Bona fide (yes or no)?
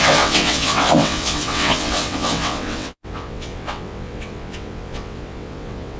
no